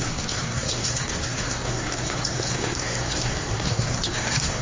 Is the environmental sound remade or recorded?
remade